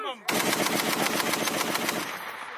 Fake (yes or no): no